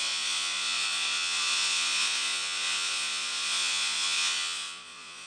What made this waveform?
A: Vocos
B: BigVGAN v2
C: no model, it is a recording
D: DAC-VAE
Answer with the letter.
A